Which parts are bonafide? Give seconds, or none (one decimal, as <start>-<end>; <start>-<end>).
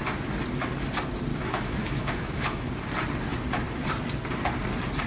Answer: 0.0-1.3; 2.7-5.1